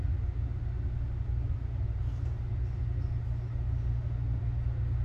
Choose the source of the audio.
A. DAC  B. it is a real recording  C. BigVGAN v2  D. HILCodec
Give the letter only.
B